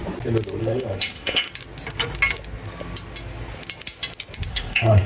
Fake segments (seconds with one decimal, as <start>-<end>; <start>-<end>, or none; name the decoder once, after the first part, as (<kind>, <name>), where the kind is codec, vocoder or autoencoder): 0.6-1.5 (autoencoder, DAC-VAE); 4.5-5.1